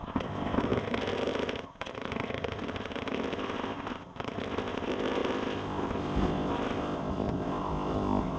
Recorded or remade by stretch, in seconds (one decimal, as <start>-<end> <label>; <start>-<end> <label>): 0.0-8.4 remade